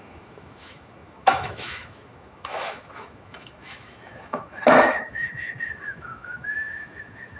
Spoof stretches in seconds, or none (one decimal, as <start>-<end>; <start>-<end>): 0.0-7.4